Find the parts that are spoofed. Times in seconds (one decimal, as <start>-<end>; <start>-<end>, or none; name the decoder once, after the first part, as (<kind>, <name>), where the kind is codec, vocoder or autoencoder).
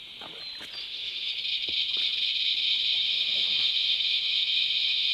0.8-1.3 (autoencoder, DAC-VAE); 3.0-5.1